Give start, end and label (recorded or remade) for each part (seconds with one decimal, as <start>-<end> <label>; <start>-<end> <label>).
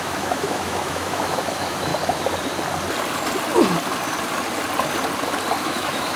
0.0-1.9 remade; 1.9-5.6 recorded; 5.6-6.2 remade